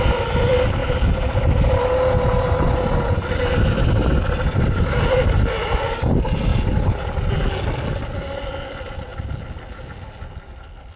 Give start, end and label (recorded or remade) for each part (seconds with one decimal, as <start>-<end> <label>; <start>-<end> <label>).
0.0-0.8 remade; 0.8-3.3 recorded; 3.3-6.5 remade; 6.5-7.6 recorded; 7.6-9.1 remade; 9.1-9.8 recorded; 9.8-11.0 remade